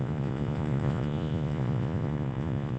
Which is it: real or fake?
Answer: fake